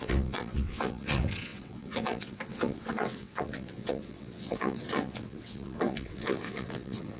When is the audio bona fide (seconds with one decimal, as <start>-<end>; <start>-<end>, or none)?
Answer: none